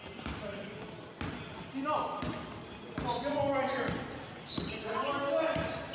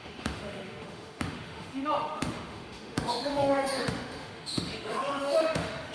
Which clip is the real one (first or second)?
first